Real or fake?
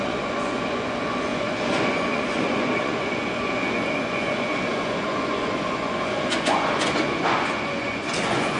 fake